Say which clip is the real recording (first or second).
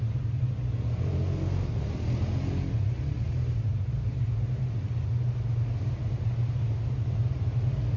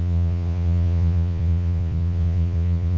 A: first